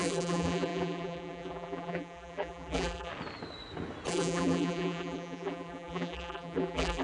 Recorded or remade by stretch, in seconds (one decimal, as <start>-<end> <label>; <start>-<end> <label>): 0.0-3.1 remade; 3.1-4.1 recorded; 4.1-7.0 remade